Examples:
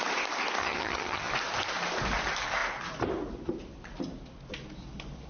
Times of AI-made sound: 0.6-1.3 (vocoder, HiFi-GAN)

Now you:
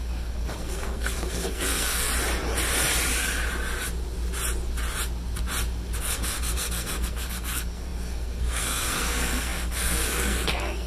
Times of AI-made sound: 0.0-2.1 (codec, SNAC); 6.0-10.9

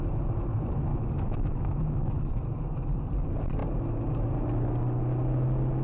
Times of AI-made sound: 0.9-2.3 (autoencoder, DAC-VAE)

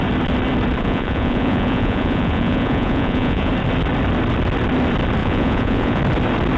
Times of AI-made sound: 0.8-3.5 (vocoder, Vocos); 5.2-6.0

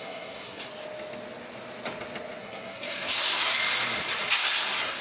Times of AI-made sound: 0.0-0.7 (codec, SNAC); 2.4-3.5; 4.4-5.0

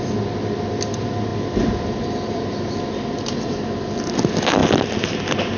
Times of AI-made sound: none

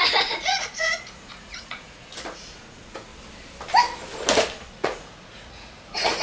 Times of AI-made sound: 0.0-3.1 (vocoder, Vocos); 4.7-6.2

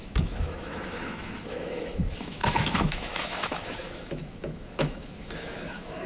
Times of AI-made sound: 0.0-6.1 (autoencoder, DAC-VAE)